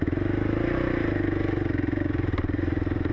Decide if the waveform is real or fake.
fake